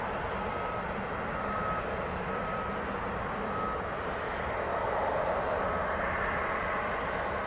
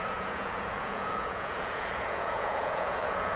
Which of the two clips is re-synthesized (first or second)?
second